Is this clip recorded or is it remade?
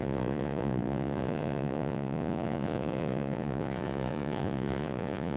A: remade